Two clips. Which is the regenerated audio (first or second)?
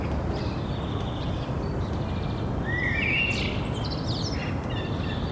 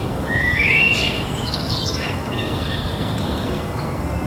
second